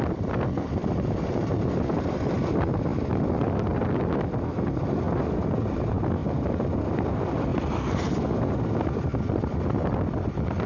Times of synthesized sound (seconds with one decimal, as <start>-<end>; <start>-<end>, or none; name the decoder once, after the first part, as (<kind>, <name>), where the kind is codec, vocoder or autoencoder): 0.0-3.7 (vocoder, BigVGAN v2); 5.2-6.2; 7.1-7.5; 9.0-10.7